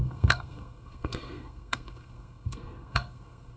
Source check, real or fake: fake